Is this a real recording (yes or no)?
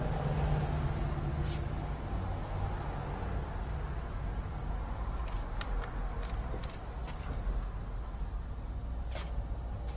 yes